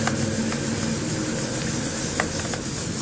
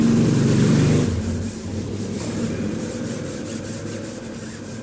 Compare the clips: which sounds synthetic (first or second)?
second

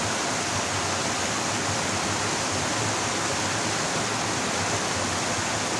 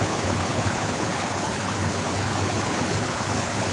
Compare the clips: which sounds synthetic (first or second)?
second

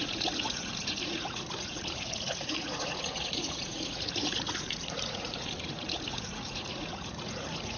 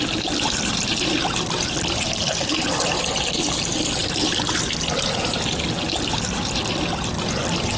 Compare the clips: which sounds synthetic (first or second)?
first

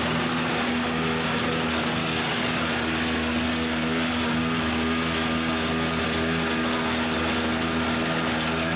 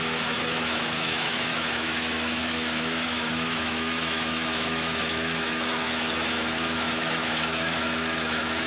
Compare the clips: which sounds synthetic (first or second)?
second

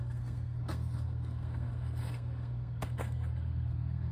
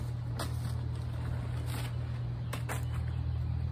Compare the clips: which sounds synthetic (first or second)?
first